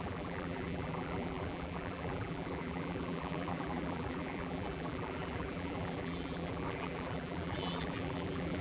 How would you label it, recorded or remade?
remade